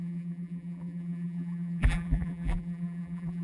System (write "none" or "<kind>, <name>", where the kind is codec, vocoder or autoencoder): vocoder, BigVGAN v2